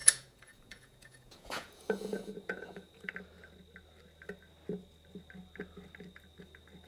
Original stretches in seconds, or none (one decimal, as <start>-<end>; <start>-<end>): 3.1-6.9